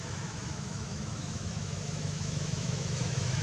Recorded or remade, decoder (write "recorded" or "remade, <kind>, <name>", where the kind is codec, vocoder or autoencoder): remade, autoencoder, DAC-VAE